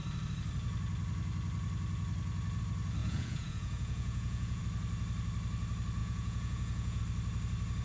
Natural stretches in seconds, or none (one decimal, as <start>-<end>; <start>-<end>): 0.0-3.0; 4.6-6.0; 7.0-7.8

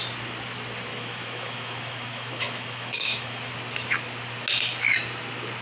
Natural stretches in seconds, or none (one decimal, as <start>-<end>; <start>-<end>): 0.0-0.9; 3.5-5.6

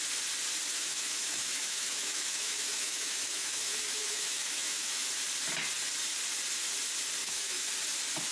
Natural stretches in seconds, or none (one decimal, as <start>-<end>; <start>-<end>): 0.0-0.7; 5.1-7.2; 7.7-8.3

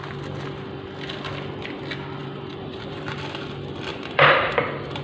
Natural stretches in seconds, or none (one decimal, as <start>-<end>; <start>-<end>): 0.0-2.2; 3.1-3.9